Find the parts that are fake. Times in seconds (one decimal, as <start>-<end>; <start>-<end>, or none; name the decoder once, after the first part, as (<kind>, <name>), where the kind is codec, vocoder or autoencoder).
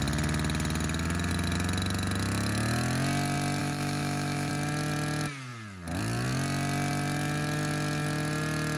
3.6-4.5 (autoencoder, DAC-VAE)